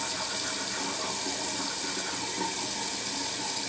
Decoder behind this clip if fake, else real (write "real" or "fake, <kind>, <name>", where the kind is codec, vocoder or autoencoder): real